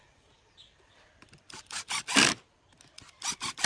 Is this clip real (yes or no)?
yes